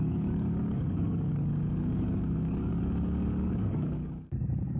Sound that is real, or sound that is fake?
fake